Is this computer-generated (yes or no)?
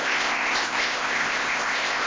yes